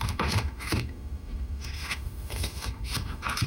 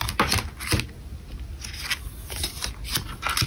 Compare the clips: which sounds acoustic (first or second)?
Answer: second